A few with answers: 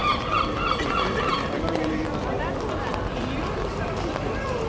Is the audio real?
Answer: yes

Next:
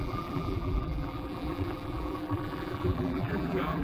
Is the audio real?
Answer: no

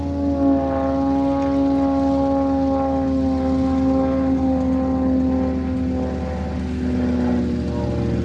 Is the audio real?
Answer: yes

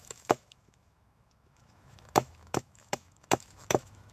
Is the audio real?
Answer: no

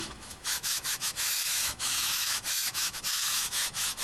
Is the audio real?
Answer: no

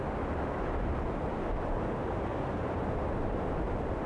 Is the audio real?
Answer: yes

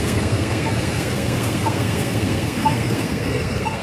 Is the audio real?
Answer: no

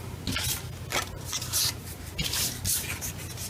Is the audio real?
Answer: yes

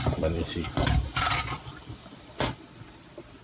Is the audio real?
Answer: no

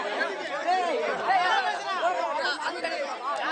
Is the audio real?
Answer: yes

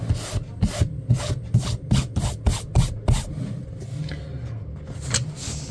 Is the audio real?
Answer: yes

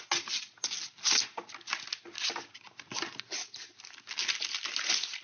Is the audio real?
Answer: yes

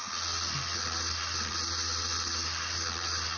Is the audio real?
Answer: yes